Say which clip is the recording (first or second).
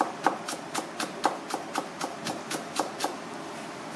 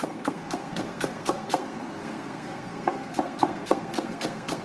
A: first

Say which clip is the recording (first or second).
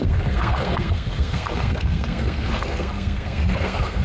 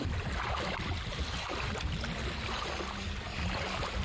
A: second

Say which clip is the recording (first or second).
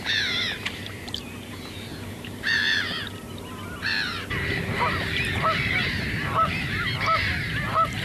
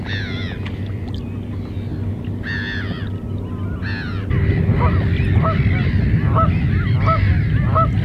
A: second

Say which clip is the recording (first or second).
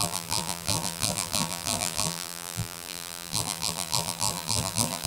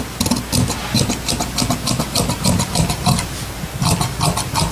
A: second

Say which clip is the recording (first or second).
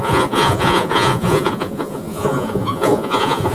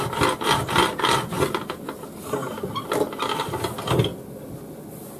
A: second